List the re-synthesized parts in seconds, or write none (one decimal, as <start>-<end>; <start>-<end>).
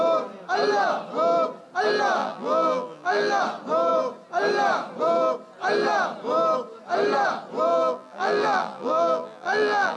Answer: 2.2-3.4; 7.7-10.0